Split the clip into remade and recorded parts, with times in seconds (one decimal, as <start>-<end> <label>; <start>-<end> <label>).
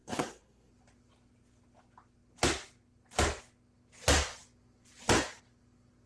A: 0.0-0.7 remade; 0.7-6.1 recorded